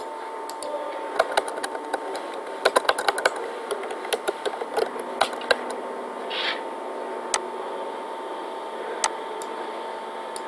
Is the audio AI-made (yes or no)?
no